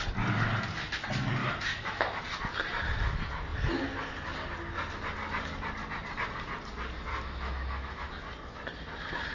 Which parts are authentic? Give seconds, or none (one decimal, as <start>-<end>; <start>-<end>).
0.0-1.4; 2.2-7.1; 8.1-9.3